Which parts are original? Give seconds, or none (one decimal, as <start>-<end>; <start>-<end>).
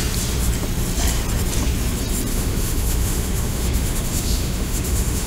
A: 0.0-2.3